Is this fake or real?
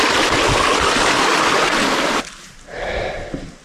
real